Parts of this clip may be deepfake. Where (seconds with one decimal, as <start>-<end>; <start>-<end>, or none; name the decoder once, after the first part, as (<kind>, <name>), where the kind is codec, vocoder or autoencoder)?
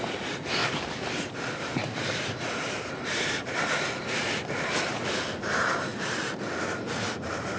0.6-5.0 (vocoder, BigVGAN v2); 5.9-6.4